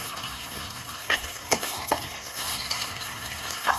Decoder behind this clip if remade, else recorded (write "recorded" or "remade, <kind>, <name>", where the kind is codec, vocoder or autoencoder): remade, codec, SNAC